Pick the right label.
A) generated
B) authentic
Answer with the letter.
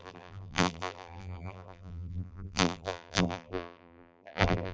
A